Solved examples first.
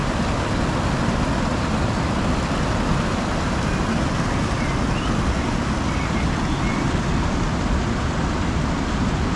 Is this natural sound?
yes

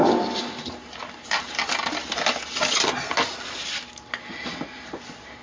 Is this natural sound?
yes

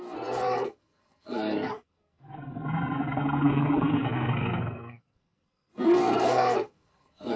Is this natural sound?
no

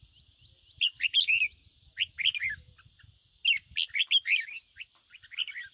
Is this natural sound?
yes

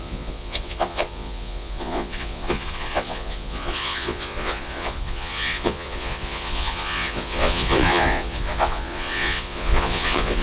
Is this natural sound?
no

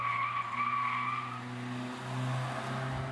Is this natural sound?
yes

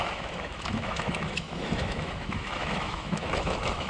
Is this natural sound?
no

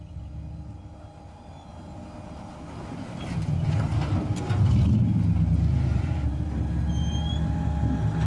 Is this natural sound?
yes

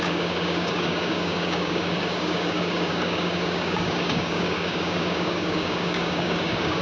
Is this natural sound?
no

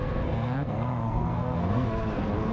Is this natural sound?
no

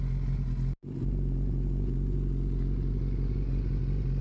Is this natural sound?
yes